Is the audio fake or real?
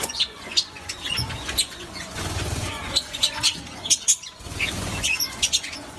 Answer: fake